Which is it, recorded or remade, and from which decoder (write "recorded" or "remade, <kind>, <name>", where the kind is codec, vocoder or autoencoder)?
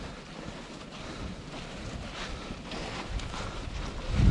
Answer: recorded